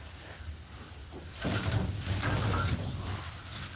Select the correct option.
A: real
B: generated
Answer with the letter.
A